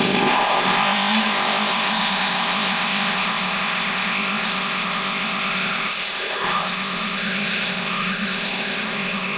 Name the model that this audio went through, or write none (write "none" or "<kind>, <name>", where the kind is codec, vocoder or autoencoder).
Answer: codec, ZipCodec